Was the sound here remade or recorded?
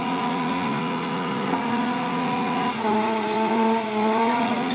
remade